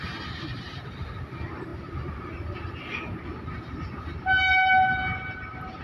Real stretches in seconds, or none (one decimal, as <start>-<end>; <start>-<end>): 0.0-5.8